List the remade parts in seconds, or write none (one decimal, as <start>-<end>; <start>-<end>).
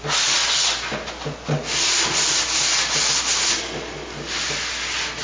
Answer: none